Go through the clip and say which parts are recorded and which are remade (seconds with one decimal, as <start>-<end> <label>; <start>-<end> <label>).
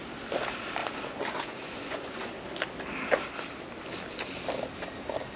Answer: 0.0-0.8 recorded; 0.8-2.3 remade; 2.3-5.4 recorded